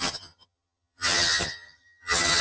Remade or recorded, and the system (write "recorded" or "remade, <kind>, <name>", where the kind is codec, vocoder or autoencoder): remade, vocoder, HiFi-GAN